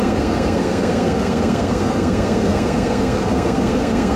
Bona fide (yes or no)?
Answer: no